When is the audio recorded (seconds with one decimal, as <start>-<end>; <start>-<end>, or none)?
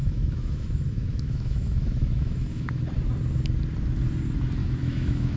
2.8-4.6